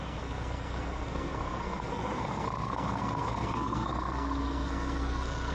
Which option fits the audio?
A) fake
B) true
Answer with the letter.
A